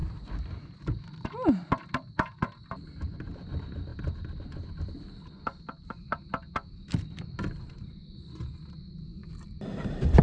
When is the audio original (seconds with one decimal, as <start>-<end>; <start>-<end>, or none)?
2.4-9.1